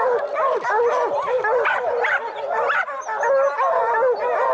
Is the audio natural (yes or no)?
yes